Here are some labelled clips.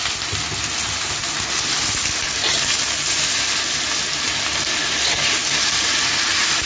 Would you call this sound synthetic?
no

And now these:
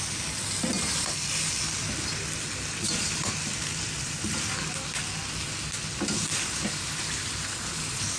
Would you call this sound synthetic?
no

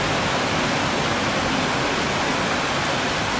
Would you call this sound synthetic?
no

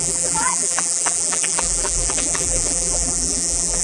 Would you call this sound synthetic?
yes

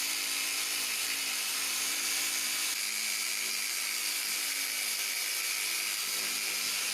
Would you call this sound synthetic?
no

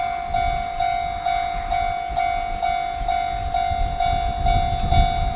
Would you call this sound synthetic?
no